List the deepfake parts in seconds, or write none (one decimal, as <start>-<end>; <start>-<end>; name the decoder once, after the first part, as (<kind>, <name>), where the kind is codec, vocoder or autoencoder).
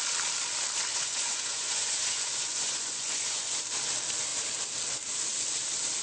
0.9-3.6 (vocoder, Vocos)